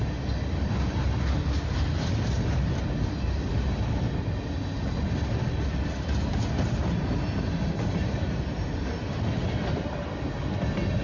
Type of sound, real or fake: real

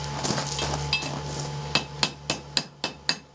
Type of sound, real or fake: real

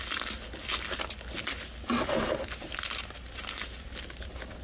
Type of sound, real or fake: real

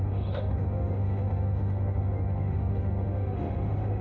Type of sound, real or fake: fake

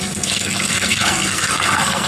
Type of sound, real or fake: fake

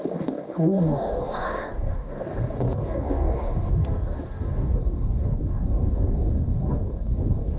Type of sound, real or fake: fake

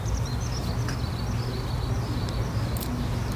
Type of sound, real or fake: real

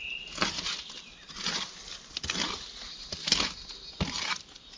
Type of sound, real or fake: real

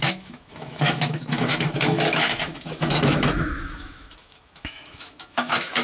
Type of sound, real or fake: fake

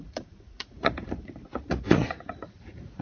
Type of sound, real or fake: fake